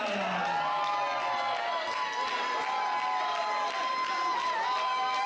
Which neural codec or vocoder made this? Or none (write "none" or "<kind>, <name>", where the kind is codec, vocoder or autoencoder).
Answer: none